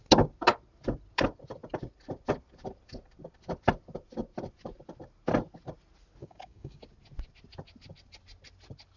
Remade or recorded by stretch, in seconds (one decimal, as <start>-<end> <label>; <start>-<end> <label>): 0.0-6.2 recorded; 6.2-6.8 remade; 6.8-9.0 recorded

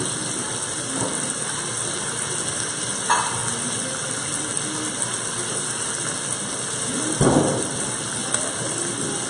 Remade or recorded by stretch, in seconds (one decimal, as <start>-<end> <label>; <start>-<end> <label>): 0.0-9.3 recorded

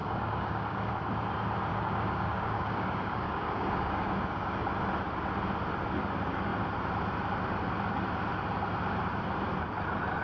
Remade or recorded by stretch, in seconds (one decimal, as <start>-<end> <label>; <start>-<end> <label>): 0.0-0.9 remade; 0.9-1.7 recorded; 1.7-4.7 remade; 4.7-10.2 recorded